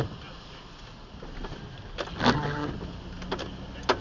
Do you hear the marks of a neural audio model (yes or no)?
no